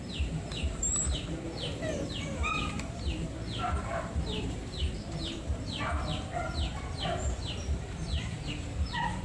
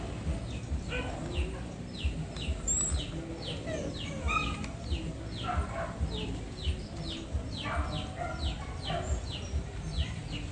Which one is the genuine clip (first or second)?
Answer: second